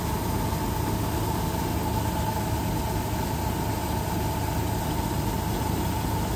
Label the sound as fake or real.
real